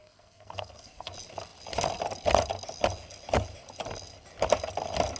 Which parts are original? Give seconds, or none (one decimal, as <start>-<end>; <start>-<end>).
1.1-5.2